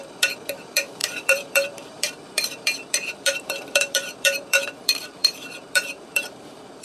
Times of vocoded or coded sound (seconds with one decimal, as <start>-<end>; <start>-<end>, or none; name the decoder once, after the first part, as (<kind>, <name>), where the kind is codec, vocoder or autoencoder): 0.0-6.8 (vocoder, BigVGAN v2)